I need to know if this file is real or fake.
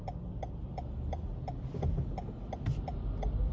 real